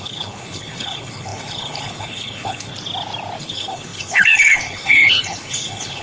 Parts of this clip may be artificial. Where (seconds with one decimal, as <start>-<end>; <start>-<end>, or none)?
0.0-2.7; 3.4-6.0